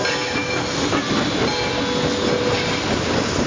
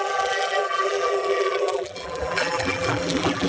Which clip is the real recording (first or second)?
first